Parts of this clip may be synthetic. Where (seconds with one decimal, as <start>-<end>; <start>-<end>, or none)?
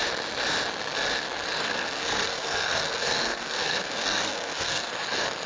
1.6-4.9